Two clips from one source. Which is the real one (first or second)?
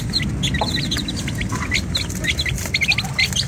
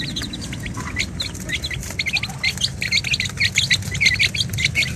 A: second